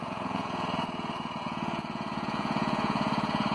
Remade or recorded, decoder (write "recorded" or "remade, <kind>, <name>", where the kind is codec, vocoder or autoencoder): remade, vocoder, Vocos